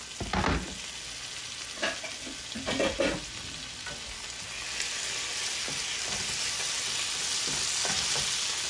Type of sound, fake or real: real